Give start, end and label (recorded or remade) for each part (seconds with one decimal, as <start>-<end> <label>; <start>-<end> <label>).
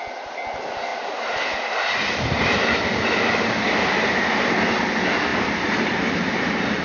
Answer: 0.0-5.3 recorded; 5.3-6.8 remade